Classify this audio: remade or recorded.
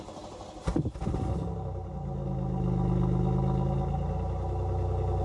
recorded